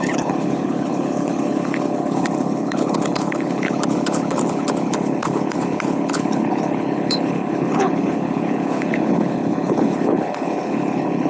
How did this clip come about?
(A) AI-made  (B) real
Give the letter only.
A